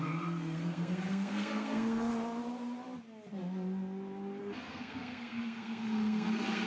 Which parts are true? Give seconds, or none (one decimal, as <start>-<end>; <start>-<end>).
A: 2.1-4.4